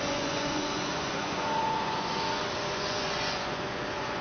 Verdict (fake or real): fake